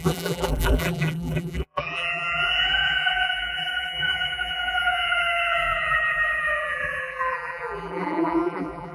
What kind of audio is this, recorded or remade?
remade